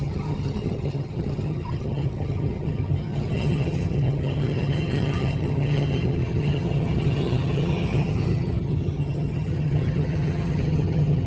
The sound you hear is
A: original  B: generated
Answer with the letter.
B